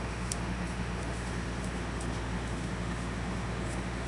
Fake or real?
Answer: fake